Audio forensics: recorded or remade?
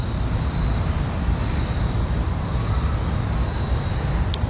recorded